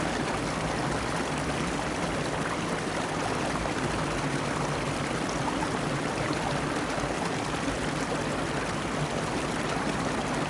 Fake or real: real